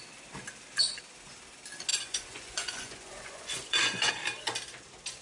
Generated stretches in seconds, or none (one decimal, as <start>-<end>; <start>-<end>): 1.9-4.1